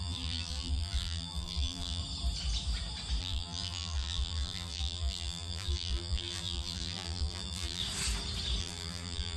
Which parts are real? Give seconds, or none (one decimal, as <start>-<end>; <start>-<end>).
2.0-3.2; 7.8-8.6